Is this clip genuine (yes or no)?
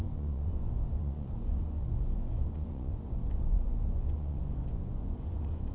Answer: no